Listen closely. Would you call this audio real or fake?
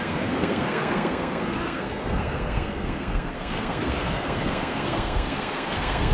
fake